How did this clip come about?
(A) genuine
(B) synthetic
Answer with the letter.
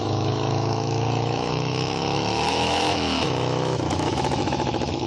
B